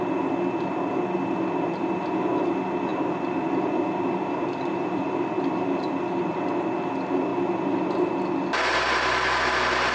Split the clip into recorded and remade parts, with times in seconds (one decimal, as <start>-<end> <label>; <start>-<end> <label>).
0.0-2.9 recorded; 2.9-5.8 remade; 5.8-7.3 recorded; 7.3-8.1 remade; 8.1-9.9 recorded

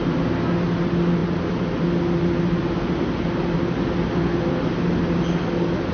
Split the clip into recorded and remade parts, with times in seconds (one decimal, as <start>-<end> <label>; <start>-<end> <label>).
0.0-5.9 recorded

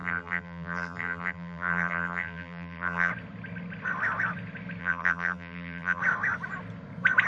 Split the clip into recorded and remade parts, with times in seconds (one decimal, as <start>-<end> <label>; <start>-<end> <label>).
0.0-3.1 remade; 3.1-4.8 recorded; 4.8-6.0 remade; 6.0-7.3 recorded

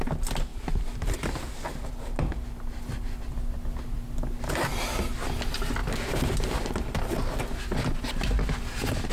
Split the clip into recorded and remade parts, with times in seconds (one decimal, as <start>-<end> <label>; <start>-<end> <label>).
0.0-0.5 recorded; 0.5-1.9 remade; 1.9-5.8 recorded; 5.8-7.0 remade; 7.0-9.1 recorded

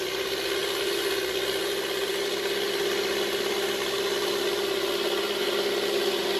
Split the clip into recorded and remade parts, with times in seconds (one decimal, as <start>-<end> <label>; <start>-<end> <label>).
0.0-6.4 recorded

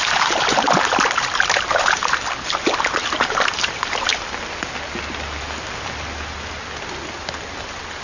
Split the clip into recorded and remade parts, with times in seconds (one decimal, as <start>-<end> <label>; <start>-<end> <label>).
0.0-2.0 remade; 2.0-2.6 recorded; 2.6-4.1 remade; 4.1-7.5 recorded; 7.5-8.0 remade

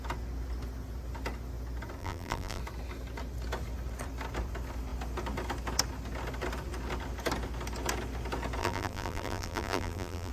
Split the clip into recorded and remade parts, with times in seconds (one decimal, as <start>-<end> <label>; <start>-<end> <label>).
0.0-2.0 recorded; 2.0-2.6 remade; 2.6-8.6 recorded; 8.6-10.3 remade